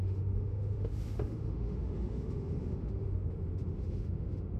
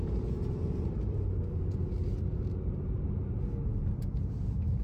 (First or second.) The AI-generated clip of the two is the first